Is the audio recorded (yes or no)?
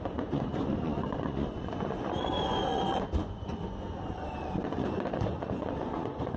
no